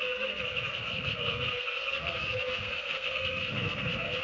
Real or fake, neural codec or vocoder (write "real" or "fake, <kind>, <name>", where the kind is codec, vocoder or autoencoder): fake, codec, SNAC